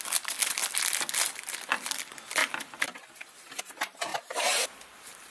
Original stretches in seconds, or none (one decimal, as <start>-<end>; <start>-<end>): 0.0-4.1